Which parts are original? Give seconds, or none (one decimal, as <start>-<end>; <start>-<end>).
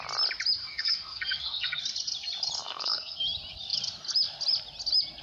0.0-0.6; 1.8-2.6; 3.2-5.2